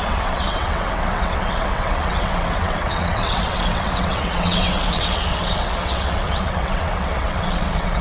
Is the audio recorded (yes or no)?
no